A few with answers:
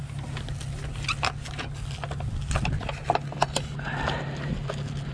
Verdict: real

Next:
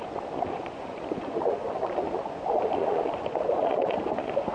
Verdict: fake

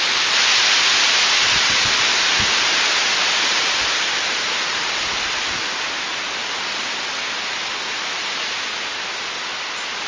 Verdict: real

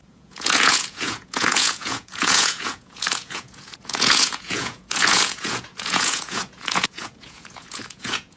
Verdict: fake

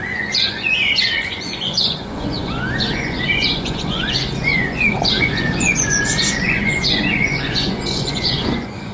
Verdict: fake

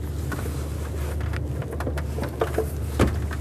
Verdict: real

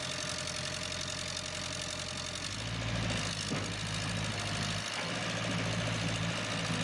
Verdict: real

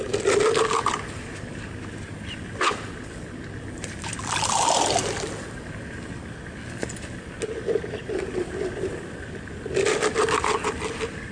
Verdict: real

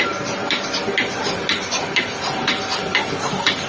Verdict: real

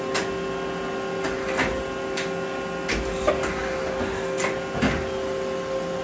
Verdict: real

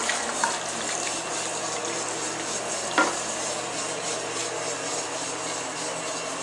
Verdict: real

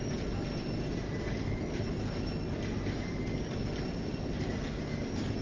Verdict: real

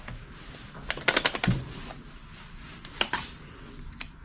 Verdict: real